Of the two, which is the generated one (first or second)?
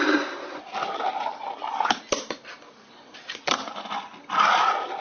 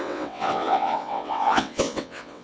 second